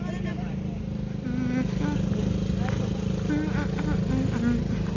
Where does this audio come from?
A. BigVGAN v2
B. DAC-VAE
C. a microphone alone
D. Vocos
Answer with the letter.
C